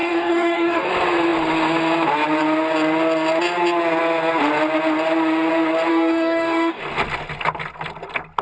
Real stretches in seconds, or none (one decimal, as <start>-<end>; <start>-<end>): 0.9-5.9; 6.8-8.4